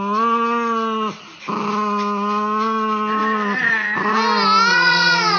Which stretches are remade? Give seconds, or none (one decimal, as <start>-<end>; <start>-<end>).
3.2-4.1; 4.7-5.4